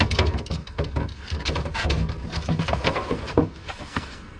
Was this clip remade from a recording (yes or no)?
yes